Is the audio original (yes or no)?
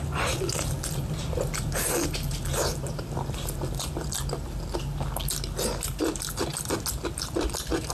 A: yes